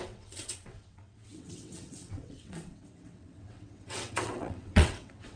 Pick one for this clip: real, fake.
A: fake